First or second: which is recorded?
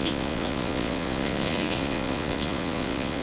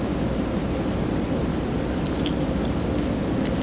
second